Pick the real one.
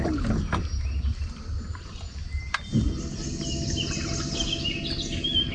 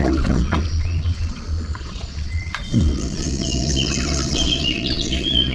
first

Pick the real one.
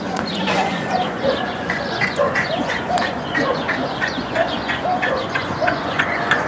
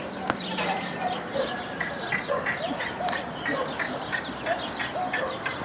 second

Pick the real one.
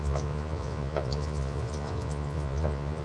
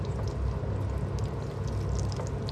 second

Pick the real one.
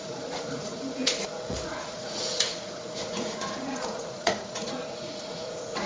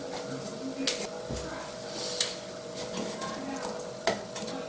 second